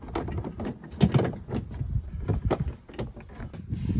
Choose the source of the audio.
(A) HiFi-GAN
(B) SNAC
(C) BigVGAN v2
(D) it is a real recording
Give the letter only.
D